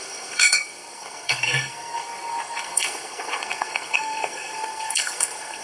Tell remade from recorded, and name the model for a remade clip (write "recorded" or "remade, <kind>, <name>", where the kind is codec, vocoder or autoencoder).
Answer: remade, codec, SNAC